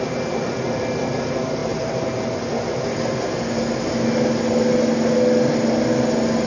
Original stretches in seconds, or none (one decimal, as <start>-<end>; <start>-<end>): 0.0-6.5

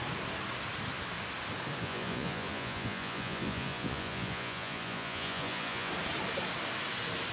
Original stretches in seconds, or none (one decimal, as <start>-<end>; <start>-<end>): 0.0-1.8; 5.9-7.3

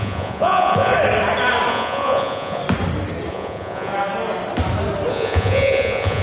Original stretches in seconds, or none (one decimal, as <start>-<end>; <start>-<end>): 0.9-1.7; 2.6-3.3; 3.9-5.1

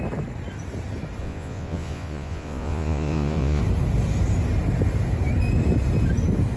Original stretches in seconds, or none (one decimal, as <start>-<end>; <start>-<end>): 0.0-1.2; 3.6-6.6

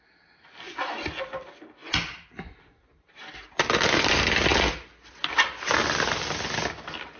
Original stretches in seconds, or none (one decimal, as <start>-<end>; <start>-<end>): 0.0-7.2

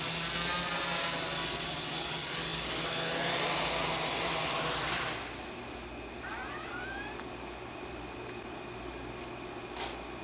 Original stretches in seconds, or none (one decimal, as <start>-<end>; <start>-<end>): 0.0-10.2

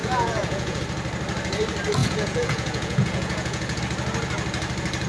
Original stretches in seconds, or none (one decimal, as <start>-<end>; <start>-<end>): 0.8-2.0; 3.8-5.1

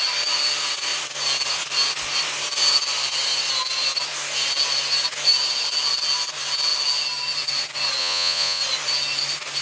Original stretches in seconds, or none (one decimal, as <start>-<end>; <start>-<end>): 0.0-8.0; 8.6-9.6